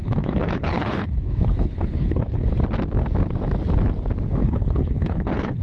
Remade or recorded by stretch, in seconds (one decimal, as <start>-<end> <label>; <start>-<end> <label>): 0.0-2.5 remade; 2.5-4.4 recorded; 4.4-5.6 remade